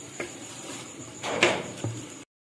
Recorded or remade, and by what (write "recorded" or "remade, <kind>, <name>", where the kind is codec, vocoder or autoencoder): remade, vocoder, BigVGAN v2